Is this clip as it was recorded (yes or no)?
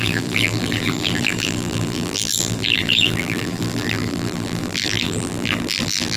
no